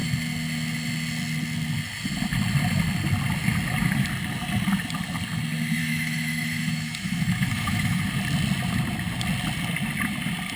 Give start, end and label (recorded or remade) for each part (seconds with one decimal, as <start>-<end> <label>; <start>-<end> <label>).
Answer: 0.0-5.8 recorded; 5.8-8.0 remade; 8.0-10.6 recorded